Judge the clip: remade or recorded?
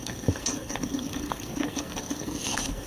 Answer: remade